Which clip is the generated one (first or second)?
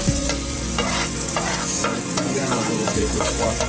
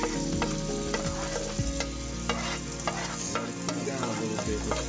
first